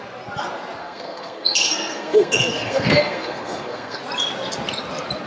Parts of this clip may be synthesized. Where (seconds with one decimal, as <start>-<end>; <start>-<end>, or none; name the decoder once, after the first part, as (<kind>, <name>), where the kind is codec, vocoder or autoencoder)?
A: 0.8-4.0 (codec, SNAC)